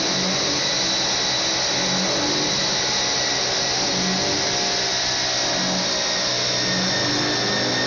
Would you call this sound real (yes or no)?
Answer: yes